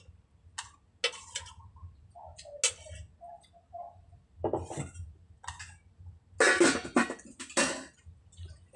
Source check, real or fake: real